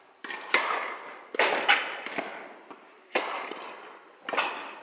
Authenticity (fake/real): real